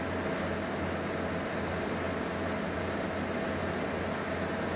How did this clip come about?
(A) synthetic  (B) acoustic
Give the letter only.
B